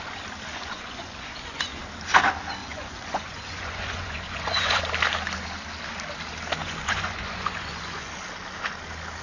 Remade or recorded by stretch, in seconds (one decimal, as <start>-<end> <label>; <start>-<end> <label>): 0.0-0.5 recorded; 0.5-1.8 remade; 1.8-2.6 recorded; 2.6-4.8 remade; 4.8-6.6 recorded; 6.6-8.1 remade; 8.1-9.2 recorded